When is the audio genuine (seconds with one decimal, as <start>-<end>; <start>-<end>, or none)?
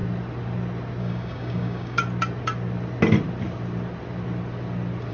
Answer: 0.0-1.0; 2.0-5.1